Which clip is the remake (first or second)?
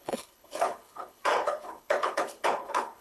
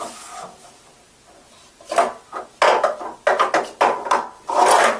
first